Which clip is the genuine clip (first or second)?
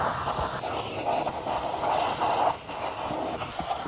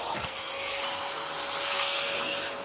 first